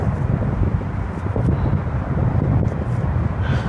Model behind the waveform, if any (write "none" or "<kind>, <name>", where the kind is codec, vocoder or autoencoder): none